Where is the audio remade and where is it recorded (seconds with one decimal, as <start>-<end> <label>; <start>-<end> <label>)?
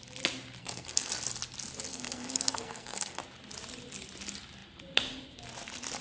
0.0-0.6 recorded; 0.6-1.1 remade; 1.1-1.9 recorded; 1.9-3.2 remade; 3.2-6.0 recorded